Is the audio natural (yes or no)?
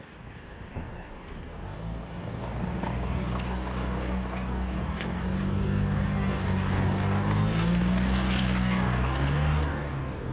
no